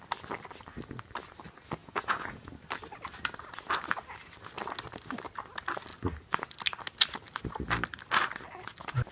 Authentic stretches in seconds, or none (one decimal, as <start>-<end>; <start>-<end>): 0.0-1.8; 2.5-9.1